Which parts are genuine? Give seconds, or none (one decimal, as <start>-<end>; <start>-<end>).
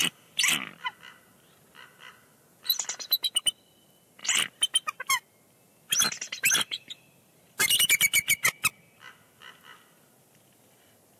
0.5-7.6; 8.4-11.2